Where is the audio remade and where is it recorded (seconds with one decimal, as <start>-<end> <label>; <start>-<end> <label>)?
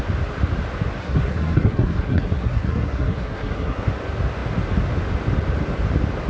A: 0.0-1.0 recorded; 1.0-3.9 remade; 3.9-6.3 recorded